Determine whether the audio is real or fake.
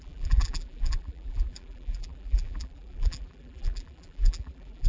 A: fake